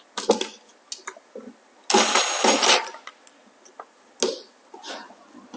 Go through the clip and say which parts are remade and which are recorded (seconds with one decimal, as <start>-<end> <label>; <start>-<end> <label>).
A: 0.0-5.6 recorded